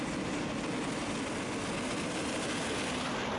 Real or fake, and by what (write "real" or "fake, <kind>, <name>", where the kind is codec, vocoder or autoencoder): real